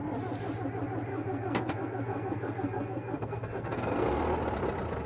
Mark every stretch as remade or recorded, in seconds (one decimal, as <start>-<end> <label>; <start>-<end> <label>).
0.0-1.1 recorded; 1.1-4.2 remade; 4.2-5.1 recorded